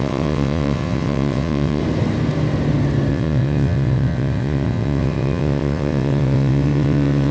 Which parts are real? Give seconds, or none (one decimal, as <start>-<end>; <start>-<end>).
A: 1.8-3.1